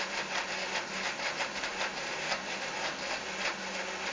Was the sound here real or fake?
real